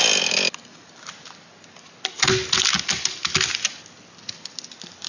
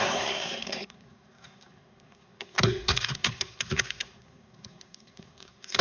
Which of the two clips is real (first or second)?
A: first